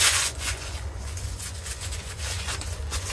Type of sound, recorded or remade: remade